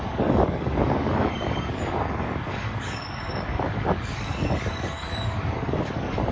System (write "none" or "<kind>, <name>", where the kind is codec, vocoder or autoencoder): codec, DAC